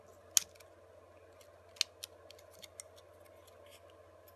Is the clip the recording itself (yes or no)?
yes